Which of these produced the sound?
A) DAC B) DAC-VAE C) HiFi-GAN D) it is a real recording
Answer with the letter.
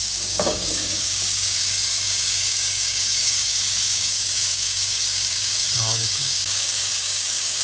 A